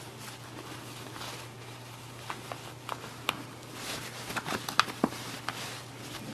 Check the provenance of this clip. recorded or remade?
recorded